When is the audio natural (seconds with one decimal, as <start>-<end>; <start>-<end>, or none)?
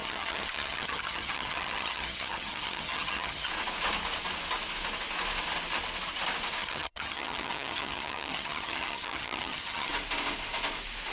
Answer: 3.5-6.6; 9.9-11.1